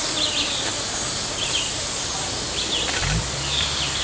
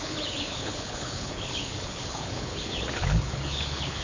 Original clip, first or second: first